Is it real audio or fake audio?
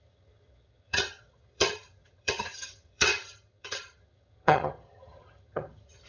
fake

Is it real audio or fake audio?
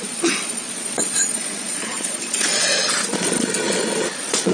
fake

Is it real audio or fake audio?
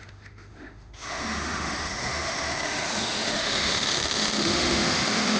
fake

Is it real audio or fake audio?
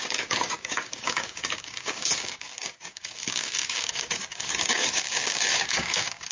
fake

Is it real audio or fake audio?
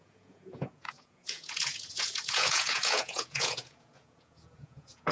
fake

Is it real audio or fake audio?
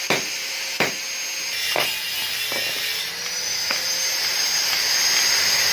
real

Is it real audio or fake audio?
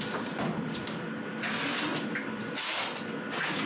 real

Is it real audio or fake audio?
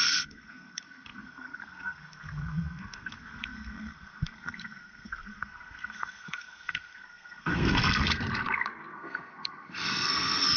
fake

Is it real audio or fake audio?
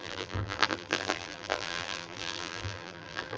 fake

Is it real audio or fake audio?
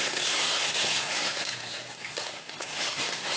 fake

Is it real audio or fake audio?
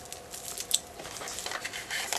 real